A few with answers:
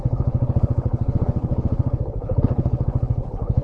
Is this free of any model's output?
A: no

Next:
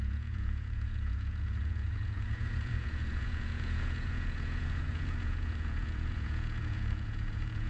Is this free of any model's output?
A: no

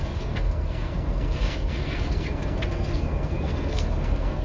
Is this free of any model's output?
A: no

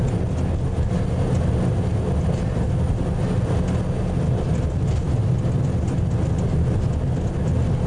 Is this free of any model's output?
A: yes